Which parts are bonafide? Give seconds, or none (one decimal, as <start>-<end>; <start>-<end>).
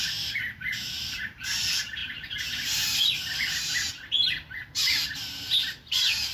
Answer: 0.0-6.3